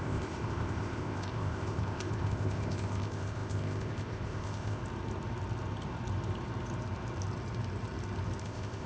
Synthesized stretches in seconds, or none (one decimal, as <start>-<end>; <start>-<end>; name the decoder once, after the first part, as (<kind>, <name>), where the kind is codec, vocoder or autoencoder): 0.0-4.8 (codec, ZipCodec); 8.4-8.9